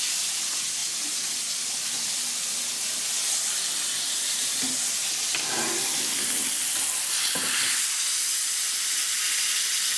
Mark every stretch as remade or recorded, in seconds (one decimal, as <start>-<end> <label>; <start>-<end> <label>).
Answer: 0.0-10.0 recorded

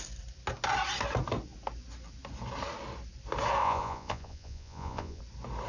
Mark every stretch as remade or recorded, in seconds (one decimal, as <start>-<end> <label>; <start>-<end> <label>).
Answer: 0.0-3.6 recorded; 3.6-5.2 remade; 5.2-5.7 recorded

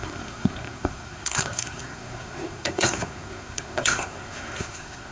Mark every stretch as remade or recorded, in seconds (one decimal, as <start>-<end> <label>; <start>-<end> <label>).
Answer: 0.0-5.1 remade

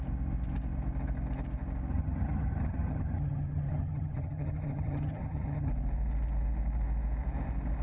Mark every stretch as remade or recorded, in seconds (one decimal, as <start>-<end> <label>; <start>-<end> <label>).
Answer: 0.0-1.9 recorded; 1.9-5.7 remade; 5.7-7.8 recorded

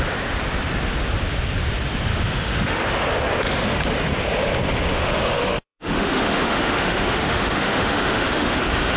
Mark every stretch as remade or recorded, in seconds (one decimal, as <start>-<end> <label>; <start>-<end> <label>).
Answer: 0.0-2.1 recorded; 2.1-2.8 remade; 2.8-4.9 recorded; 4.9-8.6 remade; 8.6-9.0 recorded

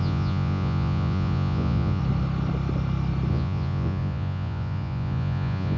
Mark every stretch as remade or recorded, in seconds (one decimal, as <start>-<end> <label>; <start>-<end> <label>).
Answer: 0.0-2.0 remade; 2.0-3.3 recorded; 3.3-5.8 remade